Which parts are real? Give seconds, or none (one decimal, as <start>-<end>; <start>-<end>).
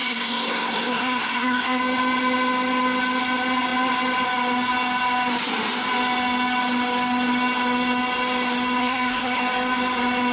1.8-8.8; 9.4-10.3